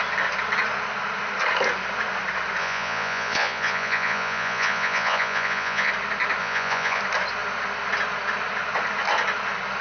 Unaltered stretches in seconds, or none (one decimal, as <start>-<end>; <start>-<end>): 0.0-2.6; 5.9-6.4; 7.0-9.8